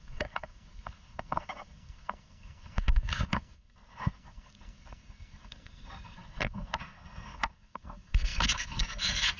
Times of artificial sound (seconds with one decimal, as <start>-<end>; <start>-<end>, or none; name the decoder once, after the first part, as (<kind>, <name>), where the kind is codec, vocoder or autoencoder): 0.0-9.4 (codec, SNAC)